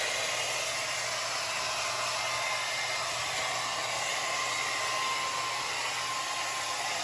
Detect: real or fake real